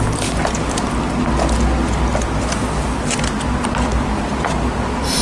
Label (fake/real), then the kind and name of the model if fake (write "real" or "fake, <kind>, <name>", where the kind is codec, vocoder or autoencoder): real